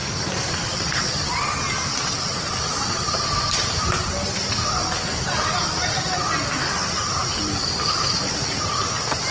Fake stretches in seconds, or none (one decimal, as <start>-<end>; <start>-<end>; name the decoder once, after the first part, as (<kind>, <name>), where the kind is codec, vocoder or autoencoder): 0.0-1.0 (vocoder, BigVGAN v2); 7.2-8.2